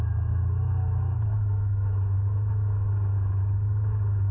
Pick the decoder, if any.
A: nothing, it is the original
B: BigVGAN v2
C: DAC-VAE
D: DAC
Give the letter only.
C